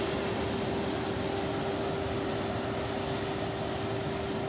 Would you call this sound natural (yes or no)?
yes